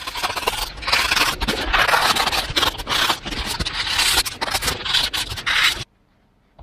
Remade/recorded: recorded